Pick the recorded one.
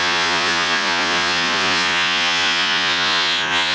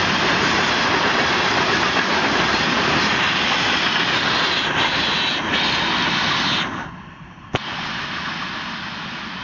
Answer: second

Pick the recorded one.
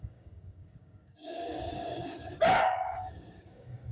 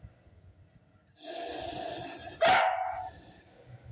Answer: second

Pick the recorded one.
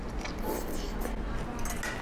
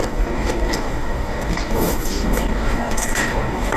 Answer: first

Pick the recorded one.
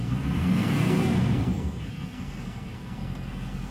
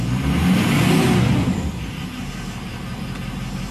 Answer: second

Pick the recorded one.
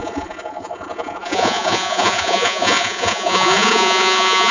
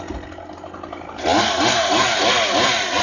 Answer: second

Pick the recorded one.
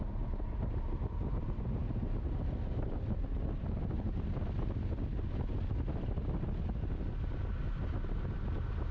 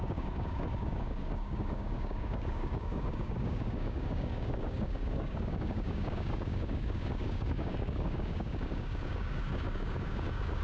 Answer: first